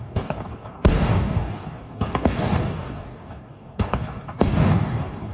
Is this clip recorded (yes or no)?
no